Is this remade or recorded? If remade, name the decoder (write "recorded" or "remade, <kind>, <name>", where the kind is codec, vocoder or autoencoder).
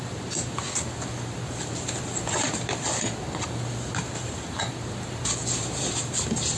recorded